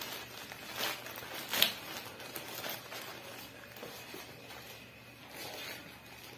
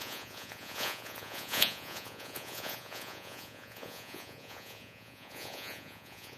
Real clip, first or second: first